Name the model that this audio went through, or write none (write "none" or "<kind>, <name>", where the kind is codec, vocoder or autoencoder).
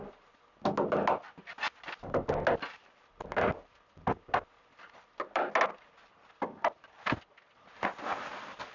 none